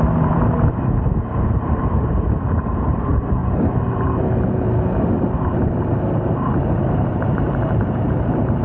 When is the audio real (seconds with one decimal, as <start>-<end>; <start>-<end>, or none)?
3.4-5.2